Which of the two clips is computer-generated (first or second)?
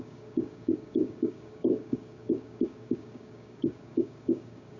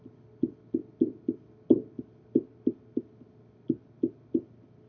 first